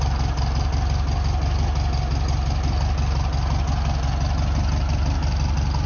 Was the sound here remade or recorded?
recorded